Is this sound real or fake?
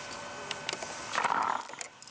real